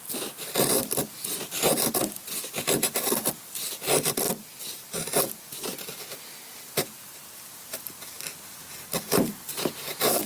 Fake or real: real